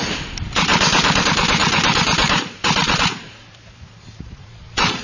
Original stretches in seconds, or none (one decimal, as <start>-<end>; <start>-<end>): 0.7-1.2